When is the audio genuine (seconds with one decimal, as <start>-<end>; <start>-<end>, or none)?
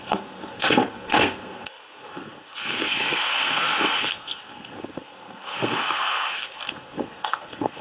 none